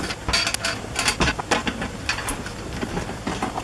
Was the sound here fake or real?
real